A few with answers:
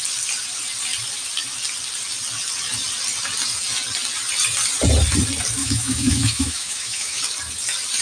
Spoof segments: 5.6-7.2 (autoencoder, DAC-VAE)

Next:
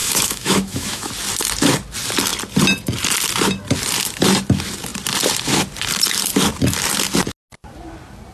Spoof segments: 0.0-1.1 (autoencoder, DAC-VAE)

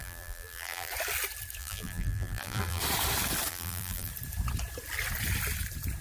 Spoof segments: 0.0-0.9 (vocoder, BigVGAN v2); 1.6-2.8; 3.5-4.1

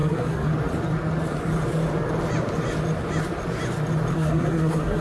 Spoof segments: 0.0-0.5 (codec, SNAC); 4.1-5.0

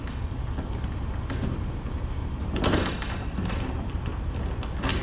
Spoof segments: 2.2-4.3 (vocoder, BigVGAN v2)

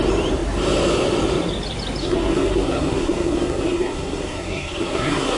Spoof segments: 2.0-5.4 (codec, SNAC)